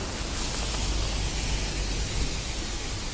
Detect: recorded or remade recorded